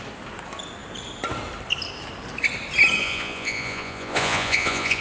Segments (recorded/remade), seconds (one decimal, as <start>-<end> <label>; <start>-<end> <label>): 0.0-3.0 recorded; 3.0-5.0 remade